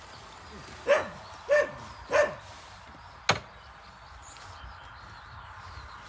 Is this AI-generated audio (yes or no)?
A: no